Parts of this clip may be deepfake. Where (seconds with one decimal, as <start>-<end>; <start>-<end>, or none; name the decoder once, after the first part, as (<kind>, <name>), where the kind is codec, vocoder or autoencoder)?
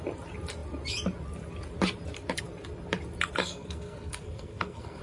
3.4-5.0 (codec, SNAC)